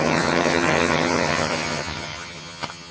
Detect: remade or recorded remade